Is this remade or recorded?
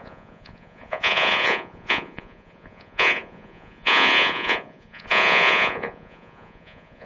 remade